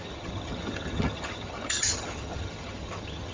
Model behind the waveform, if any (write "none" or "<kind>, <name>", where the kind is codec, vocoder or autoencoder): vocoder, HiFi-GAN